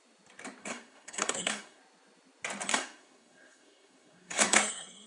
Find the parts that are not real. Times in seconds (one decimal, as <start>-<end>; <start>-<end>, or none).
0.6-1.8; 2.7-5.1